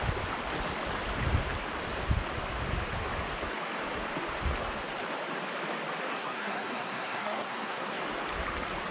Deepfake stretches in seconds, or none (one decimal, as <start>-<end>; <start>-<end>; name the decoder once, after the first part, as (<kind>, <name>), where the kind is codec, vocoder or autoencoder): 6.1-8.0 (codec, SNAC)